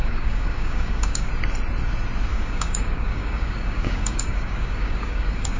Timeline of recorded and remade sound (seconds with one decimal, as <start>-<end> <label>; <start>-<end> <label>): 0.0-1.3 remade; 1.3-2.3 recorded; 2.3-5.6 remade